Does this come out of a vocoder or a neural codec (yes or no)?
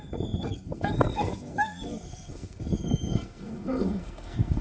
yes